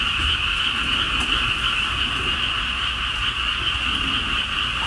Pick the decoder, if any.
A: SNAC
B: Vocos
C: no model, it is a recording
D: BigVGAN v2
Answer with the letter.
C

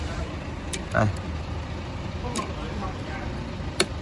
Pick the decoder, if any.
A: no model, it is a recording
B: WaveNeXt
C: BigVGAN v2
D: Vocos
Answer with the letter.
C